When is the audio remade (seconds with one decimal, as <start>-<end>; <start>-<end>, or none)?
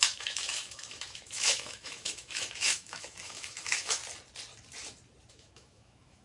0.0-4.0; 5.3-6.2